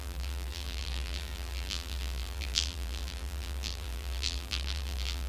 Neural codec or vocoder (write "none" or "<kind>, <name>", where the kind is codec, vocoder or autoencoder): vocoder, BigVGAN v2